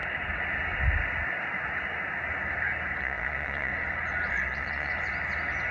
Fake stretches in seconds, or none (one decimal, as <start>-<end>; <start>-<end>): 3.0-3.7; 4.3-4.9